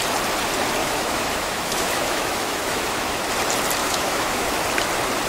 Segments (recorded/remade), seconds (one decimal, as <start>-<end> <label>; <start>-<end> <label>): 0.0-0.8 recorded; 0.8-3.2 remade; 3.2-3.8 recorded; 3.8-4.6 remade; 4.6-5.3 recorded